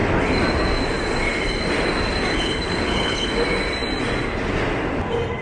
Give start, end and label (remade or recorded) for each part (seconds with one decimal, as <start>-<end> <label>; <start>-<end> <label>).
0.0-2.3 recorded; 2.3-3.3 remade; 3.3-5.4 recorded